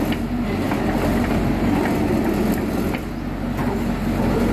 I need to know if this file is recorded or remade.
recorded